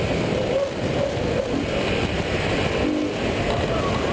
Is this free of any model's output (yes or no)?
yes